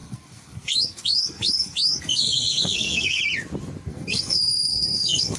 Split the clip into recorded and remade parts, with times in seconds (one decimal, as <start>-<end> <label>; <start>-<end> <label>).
0.0-3.2 remade; 3.2-3.9 recorded; 3.9-5.4 remade